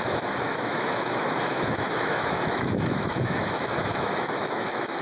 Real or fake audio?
fake